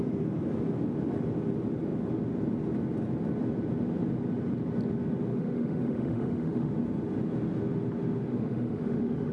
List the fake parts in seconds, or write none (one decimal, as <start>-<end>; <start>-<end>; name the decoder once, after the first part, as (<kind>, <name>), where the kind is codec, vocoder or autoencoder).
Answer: 5.3-6.7 (autoencoder, DAC-VAE); 8.3-9.3